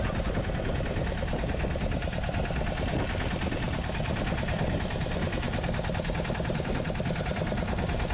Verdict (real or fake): real